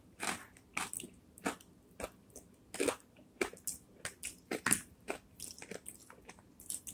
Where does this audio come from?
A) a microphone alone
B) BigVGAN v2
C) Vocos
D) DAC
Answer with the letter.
A